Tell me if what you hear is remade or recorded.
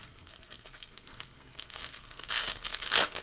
remade